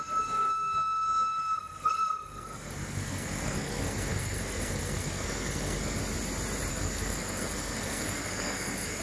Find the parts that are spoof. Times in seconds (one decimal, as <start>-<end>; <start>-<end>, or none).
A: 0.0-6.0; 6.7-9.0